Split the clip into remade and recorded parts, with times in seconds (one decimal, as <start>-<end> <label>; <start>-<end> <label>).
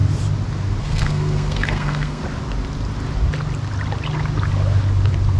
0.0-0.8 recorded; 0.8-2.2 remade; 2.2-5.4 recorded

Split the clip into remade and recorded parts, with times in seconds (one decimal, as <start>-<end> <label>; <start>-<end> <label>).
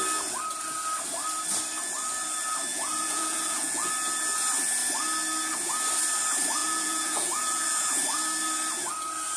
0.0-2.7 recorded; 2.7-3.9 remade; 3.9-6.6 recorded; 6.6-7.9 remade; 7.9-9.4 recorded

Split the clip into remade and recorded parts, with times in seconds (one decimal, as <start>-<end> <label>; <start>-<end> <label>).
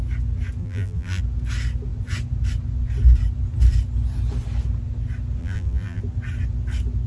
0.0-0.6 recorded; 0.6-1.2 remade; 1.2-5.4 recorded; 5.4-6.0 remade; 6.0-7.1 recorded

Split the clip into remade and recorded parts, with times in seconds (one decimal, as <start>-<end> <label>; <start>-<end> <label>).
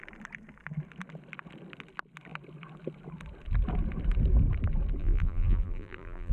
0.0-5.0 recorded; 5.0-6.3 remade